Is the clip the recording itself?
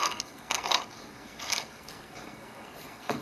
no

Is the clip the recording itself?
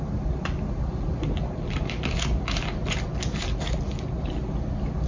yes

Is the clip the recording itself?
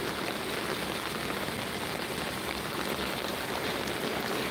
yes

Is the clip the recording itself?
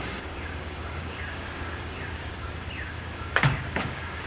no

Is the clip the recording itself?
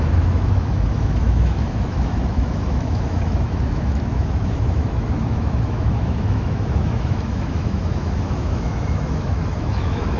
no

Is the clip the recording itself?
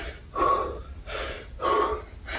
yes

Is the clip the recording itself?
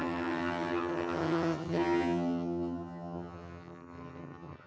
no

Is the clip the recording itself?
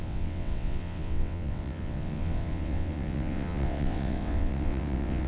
no